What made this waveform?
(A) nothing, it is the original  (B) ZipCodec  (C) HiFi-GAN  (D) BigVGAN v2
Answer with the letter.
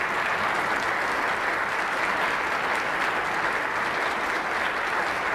A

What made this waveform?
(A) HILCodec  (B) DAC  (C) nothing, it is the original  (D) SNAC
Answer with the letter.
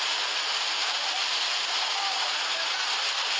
C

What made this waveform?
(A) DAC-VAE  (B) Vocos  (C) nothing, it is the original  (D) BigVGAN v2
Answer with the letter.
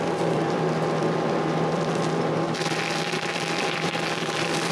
D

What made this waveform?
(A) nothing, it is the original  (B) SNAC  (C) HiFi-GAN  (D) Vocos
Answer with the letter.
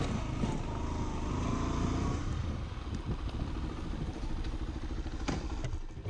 A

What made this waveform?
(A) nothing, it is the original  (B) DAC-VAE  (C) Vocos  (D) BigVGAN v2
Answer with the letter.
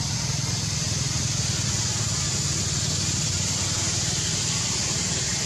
A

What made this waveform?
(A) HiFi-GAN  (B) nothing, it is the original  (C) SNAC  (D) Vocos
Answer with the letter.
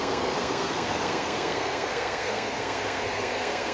C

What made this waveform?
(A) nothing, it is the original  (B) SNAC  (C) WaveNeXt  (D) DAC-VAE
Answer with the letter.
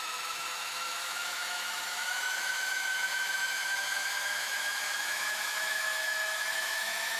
D